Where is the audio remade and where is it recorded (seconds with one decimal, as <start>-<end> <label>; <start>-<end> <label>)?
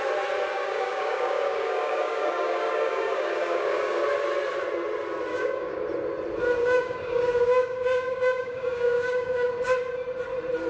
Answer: 0.0-0.5 recorded; 0.5-4.0 remade; 4.0-5.3 recorded; 5.3-5.8 remade; 5.8-6.6 recorded; 6.6-9.5 remade; 9.5-10.7 recorded